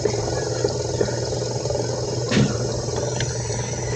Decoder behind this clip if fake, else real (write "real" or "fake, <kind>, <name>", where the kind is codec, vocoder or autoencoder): fake, vocoder, BigVGAN v2